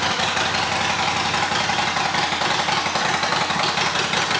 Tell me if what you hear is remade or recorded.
recorded